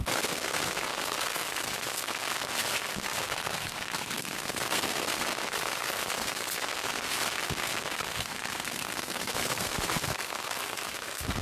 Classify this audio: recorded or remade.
remade